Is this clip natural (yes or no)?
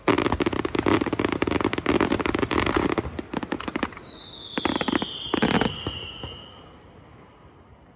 yes